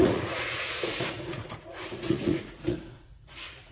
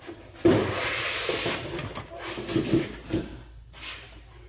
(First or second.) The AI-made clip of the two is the first